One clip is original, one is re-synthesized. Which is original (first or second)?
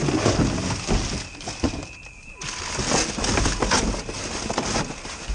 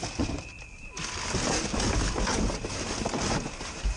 first